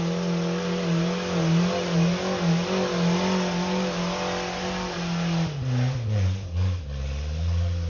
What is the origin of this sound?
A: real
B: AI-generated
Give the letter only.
A